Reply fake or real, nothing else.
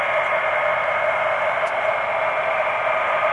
real